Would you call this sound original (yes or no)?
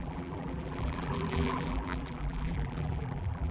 no